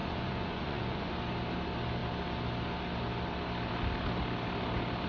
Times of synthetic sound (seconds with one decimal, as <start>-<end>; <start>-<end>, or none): 0.0-1.1

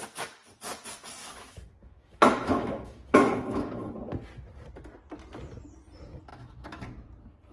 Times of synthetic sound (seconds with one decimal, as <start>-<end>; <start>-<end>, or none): 1.2-3.9; 6.3-6.8

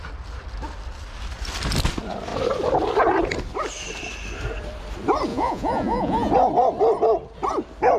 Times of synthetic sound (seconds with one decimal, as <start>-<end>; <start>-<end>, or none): 5.3-6.3

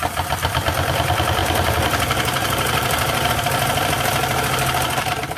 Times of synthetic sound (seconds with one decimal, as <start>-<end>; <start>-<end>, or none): 1.4-3.3

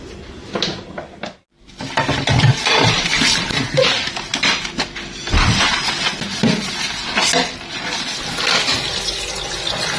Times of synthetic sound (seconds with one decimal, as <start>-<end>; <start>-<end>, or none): none

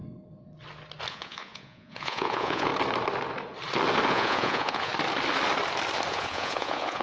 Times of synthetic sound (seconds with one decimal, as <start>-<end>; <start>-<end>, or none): 1.1-2.7; 4.1-4.9; 6.1-7.0